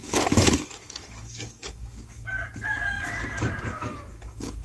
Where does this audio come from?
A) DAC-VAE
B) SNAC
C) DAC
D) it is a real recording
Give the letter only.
C